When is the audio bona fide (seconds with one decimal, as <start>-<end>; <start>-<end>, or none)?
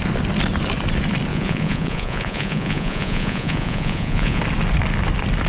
0.0-1.3; 4.4-5.5